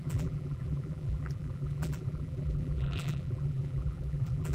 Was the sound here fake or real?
fake